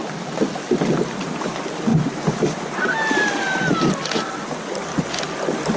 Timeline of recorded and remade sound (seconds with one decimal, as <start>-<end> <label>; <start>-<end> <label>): 0.0-5.8 recorded